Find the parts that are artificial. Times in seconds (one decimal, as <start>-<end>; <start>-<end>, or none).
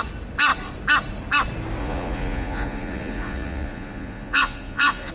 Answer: 1.8-5.1